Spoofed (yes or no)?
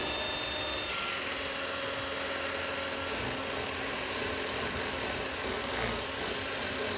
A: no